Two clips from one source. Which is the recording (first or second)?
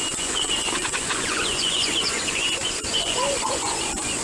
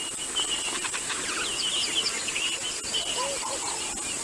second